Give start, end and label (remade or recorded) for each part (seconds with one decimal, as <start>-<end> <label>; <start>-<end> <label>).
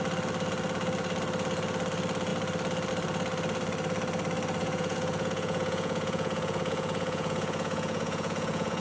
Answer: 0.0-4.6 recorded; 4.6-8.8 remade